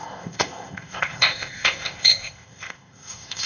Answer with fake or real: fake